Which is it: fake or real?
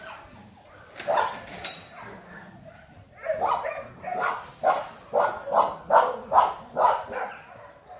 real